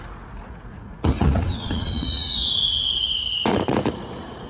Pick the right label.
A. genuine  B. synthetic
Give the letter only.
B